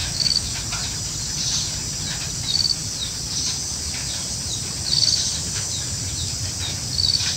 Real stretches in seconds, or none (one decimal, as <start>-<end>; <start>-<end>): 0.5-7.4